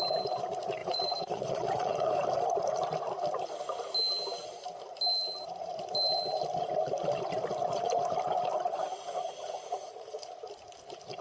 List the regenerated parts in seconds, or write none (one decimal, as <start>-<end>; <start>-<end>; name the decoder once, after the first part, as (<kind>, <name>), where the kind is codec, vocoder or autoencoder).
0.8-2.1 (vocoder, Vocos); 8.9-10.2